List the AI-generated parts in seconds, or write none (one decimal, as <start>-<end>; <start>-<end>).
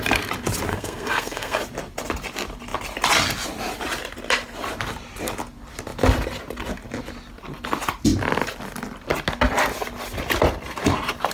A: 0.7-1.6